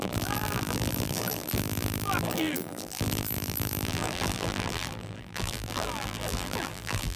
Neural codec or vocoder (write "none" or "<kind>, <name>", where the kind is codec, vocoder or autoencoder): vocoder, BigVGAN v2